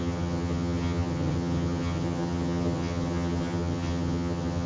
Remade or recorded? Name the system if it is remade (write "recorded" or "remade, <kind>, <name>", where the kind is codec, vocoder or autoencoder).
remade, vocoder, HiFi-GAN